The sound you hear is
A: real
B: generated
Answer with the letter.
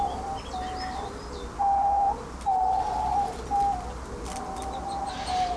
A